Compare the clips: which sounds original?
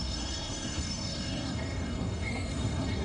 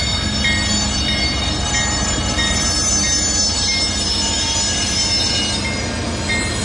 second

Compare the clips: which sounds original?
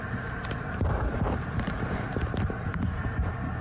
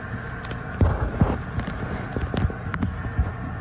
second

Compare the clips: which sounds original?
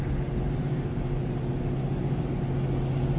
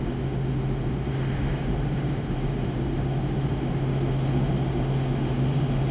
first